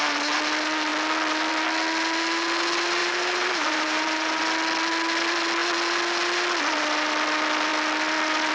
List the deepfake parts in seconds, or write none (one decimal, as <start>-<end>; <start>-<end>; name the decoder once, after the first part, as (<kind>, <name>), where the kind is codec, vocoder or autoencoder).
3.0-4.4 (vocoder, BigVGAN v2)